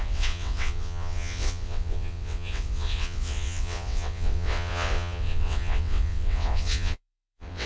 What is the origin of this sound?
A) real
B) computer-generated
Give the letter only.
B